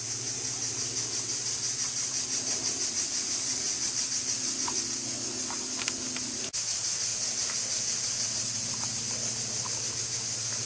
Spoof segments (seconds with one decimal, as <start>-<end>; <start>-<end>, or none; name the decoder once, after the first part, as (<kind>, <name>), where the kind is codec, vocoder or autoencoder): none